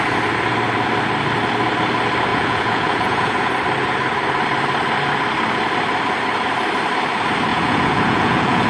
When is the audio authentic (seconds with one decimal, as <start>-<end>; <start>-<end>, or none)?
0.0-2.3; 3.5-7.5